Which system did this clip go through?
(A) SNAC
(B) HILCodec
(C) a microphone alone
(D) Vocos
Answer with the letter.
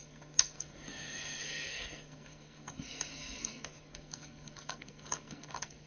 A